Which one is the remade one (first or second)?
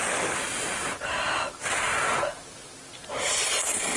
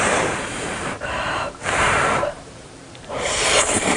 second